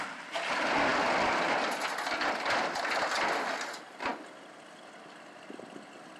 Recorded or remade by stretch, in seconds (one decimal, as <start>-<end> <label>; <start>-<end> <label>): 0.0-6.2 recorded